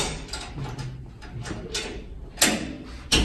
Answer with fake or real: real